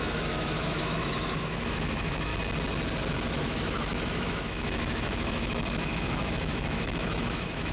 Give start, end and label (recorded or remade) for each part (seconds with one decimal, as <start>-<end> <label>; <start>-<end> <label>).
0.0-2.3 remade; 2.3-3.4 recorded; 3.4-7.7 remade